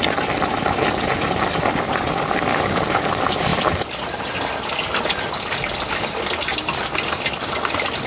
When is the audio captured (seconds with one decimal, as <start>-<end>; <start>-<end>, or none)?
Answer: 0.0-2.5; 3.1-8.1